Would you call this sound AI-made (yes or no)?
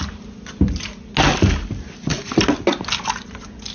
no